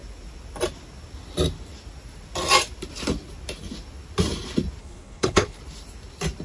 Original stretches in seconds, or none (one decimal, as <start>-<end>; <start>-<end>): 0.0-4.8; 5.6-6.4